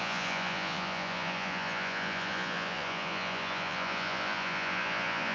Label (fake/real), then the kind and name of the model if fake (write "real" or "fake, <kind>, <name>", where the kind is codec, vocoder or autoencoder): fake, vocoder, Vocos